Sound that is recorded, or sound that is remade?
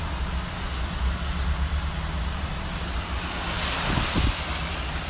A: recorded